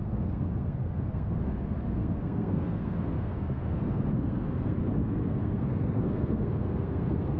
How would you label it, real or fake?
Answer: fake